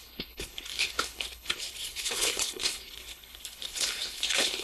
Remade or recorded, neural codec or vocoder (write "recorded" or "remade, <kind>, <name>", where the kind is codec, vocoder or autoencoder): remade, codec, HILCodec